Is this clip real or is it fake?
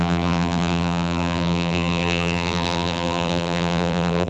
fake